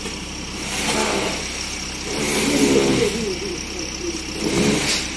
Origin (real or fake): real